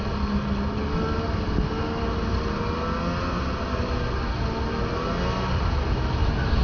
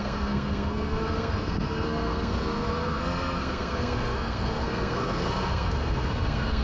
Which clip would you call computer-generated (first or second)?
second